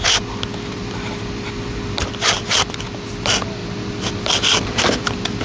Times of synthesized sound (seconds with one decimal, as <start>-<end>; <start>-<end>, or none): none